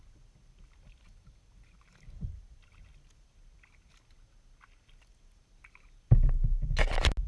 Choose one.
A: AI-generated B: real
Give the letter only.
B